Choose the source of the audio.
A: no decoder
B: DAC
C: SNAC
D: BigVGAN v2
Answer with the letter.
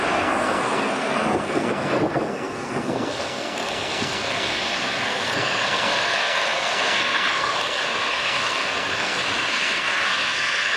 C